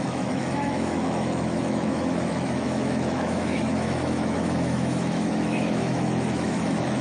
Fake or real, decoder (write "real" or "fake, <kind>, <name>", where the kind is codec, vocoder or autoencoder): fake, autoencoder, DAC-VAE